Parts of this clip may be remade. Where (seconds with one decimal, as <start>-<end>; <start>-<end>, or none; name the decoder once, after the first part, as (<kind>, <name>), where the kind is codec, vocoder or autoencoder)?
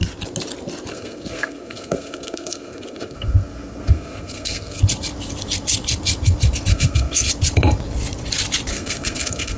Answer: 0.9-4.8 (codec, SNAC); 6.7-7.3; 8.7-9.6